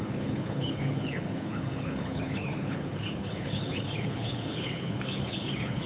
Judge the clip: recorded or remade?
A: remade